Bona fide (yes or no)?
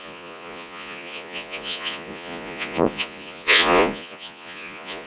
no